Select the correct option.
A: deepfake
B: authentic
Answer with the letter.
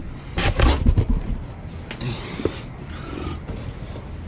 B